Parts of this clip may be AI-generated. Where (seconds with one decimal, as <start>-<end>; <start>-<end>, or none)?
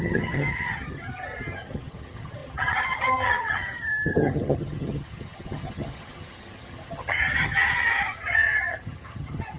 0.0-9.6